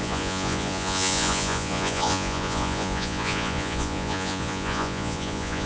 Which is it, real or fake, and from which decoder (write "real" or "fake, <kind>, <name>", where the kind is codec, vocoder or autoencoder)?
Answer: fake, vocoder, Vocos